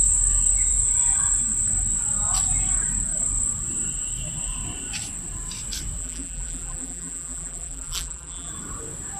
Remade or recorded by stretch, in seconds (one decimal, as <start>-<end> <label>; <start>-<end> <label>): 0.0-6.0 recorded; 6.0-8.5 remade; 8.5-9.2 recorded

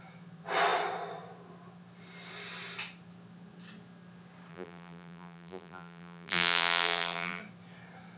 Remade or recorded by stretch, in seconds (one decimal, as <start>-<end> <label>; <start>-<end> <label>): 0.0-4.5 recorded; 4.5-7.4 remade; 7.4-8.2 recorded